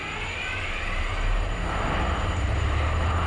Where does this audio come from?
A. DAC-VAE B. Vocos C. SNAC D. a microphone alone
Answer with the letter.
D